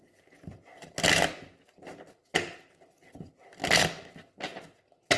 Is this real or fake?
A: real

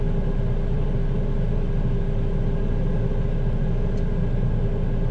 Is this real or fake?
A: real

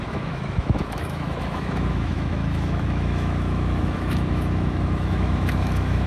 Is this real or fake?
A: fake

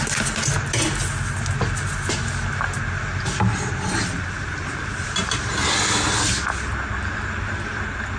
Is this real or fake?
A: real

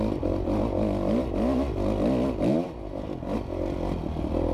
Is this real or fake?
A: real